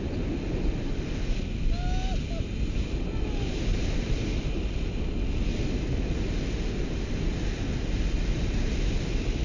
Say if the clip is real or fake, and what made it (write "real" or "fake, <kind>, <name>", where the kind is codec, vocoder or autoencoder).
real